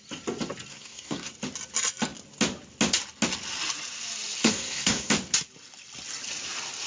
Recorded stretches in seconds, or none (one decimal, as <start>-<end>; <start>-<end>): 0.0-0.7; 1.3-4.4; 5.1-6.9